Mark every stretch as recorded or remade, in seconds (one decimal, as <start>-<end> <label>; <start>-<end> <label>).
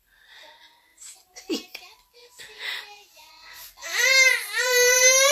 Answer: 0.0-0.9 recorded; 0.9-3.3 remade; 3.3-3.8 recorded; 3.8-5.3 remade